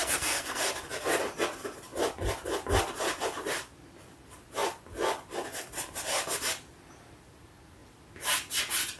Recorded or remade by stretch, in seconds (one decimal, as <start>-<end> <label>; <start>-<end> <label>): 0.0-0.6 remade; 0.6-9.0 recorded